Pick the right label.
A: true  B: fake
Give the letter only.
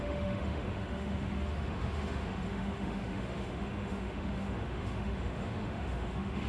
B